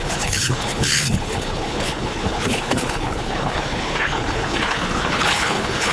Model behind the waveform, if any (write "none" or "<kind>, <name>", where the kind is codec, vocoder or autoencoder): codec, HILCodec